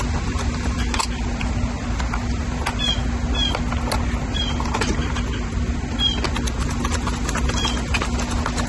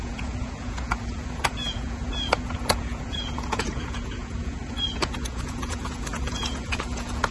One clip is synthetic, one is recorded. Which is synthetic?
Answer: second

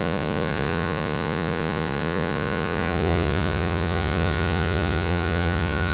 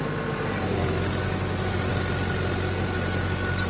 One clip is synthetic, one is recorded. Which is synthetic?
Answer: first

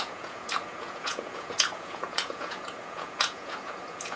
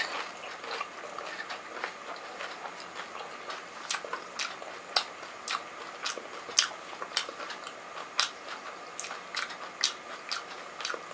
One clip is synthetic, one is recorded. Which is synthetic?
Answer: first